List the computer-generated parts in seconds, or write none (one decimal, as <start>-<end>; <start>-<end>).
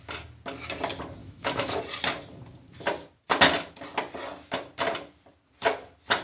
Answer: 1.2-1.8